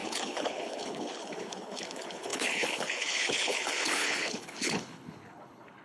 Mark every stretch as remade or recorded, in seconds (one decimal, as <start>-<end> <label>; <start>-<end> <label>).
0.0-5.8 remade